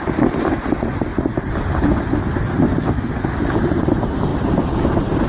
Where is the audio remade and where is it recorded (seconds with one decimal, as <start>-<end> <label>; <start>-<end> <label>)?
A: 0.0-5.3 recorded